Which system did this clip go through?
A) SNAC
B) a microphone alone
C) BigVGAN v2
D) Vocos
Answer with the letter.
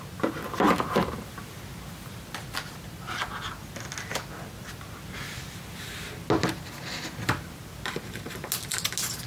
B